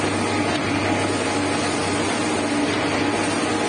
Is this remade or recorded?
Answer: recorded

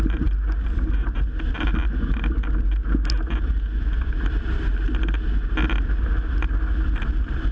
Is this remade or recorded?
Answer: recorded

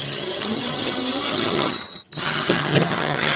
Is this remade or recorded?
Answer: remade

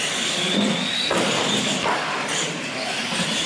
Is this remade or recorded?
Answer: recorded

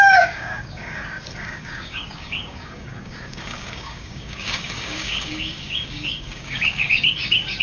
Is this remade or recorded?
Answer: remade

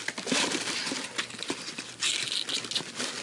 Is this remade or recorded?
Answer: recorded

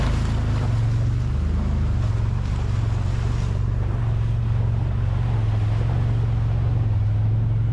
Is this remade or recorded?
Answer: recorded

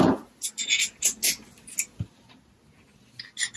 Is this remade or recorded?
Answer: recorded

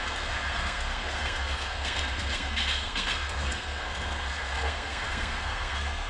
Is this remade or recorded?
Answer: remade